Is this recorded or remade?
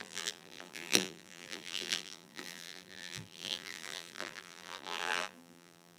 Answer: remade